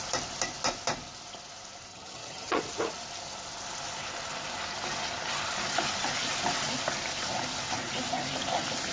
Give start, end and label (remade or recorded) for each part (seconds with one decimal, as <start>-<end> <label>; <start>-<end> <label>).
0.0-1.9 recorded; 1.9-2.6 remade; 2.6-8.9 recorded